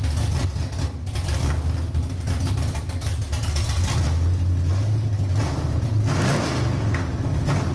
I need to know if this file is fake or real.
real